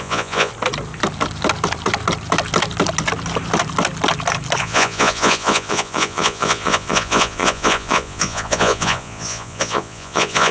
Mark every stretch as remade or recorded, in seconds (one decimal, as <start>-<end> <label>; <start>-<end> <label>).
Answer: 0.0-0.5 remade; 0.5-4.6 recorded; 4.6-10.5 remade